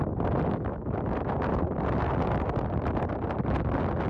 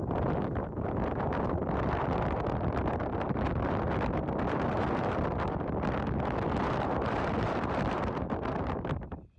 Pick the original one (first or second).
first